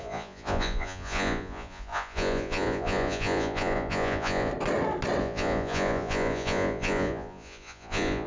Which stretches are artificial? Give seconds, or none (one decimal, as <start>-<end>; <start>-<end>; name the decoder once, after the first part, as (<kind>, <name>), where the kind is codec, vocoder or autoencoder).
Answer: 0.0-4.5 (vocoder, Vocos); 5.2-8.3